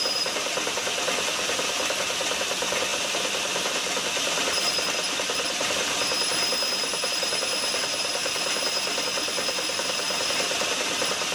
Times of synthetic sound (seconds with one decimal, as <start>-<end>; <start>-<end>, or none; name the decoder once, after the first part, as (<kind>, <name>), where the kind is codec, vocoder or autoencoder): 0.0-11.3 (vocoder, BigVGAN v2)